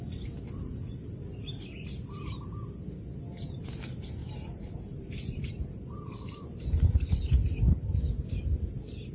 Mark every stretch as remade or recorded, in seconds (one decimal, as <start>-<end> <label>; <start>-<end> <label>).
0.0-4.2 recorded; 4.2-7.5 remade; 7.5-9.1 recorded